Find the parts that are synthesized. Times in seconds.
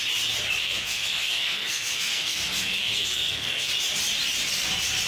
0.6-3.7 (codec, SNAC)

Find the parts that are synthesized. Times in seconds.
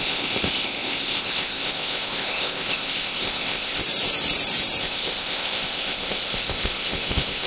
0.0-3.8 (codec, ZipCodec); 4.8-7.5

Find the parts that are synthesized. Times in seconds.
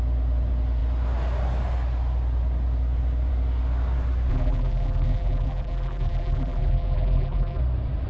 4.3-7.6 (vocoder, BigVGAN v2)